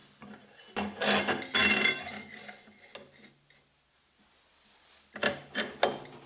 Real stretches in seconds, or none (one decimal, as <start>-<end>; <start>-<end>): 0.0-6.3